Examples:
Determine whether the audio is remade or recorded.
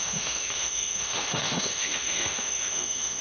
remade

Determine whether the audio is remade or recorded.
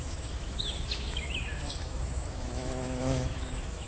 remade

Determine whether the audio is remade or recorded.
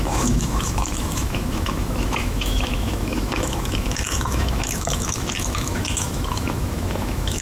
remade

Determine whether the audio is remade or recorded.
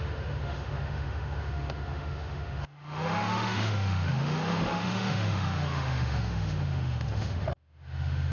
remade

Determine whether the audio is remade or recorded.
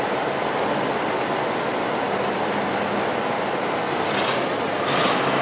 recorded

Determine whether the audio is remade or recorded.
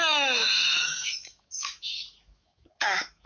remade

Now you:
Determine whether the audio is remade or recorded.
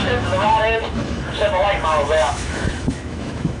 remade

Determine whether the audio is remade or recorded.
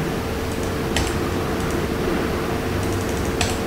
recorded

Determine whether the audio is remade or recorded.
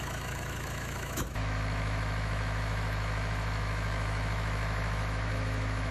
remade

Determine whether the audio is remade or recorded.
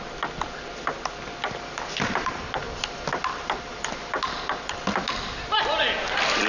recorded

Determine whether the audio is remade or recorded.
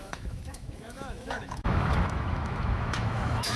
remade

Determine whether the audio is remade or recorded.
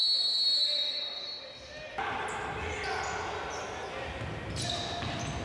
recorded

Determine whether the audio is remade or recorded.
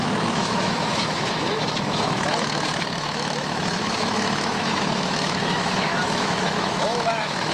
remade